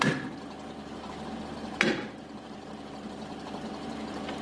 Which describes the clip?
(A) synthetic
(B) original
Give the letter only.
B